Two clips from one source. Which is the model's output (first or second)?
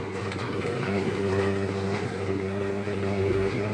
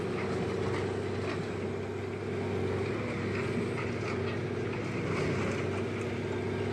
first